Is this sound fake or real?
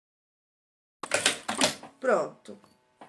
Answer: real